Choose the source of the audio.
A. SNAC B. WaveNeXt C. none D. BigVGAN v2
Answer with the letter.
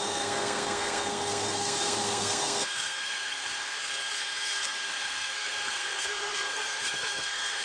A